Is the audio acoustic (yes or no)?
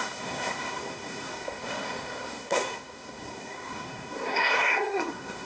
no